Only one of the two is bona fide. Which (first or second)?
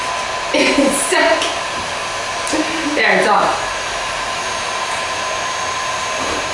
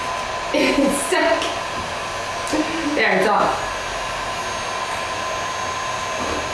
second